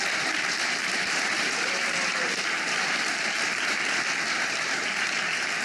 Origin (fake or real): fake